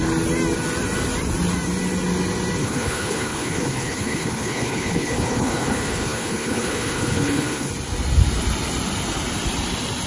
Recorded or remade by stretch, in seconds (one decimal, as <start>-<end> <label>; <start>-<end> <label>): 0.0-2.6 recorded; 2.6-7.7 remade; 7.7-10.1 recorded